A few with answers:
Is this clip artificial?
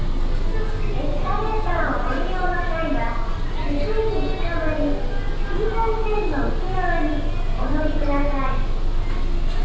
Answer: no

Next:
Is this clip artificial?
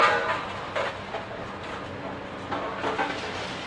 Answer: no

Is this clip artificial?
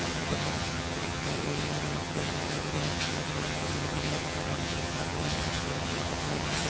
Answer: yes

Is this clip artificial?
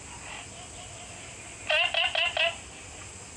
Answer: no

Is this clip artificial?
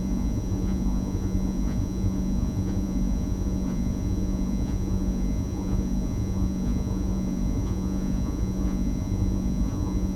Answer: yes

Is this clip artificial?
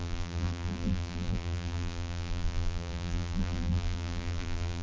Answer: yes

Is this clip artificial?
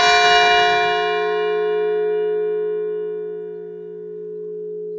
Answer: no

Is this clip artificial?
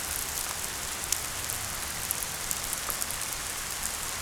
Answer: no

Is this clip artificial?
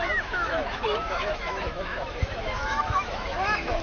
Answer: yes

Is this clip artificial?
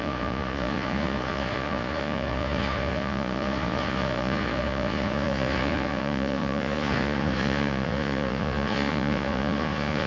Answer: yes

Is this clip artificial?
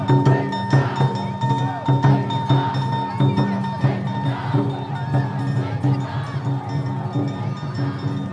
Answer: no